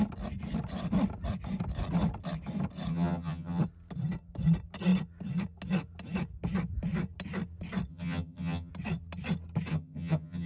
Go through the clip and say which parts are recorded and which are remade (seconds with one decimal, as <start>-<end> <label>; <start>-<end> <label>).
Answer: 0.0-2.9 recorded; 2.9-3.6 remade; 3.6-7.9 recorded; 7.9-8.7 remade; 8.7-9.7 recorded; 9.7-10.5 remade